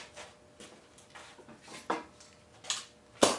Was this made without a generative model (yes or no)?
yes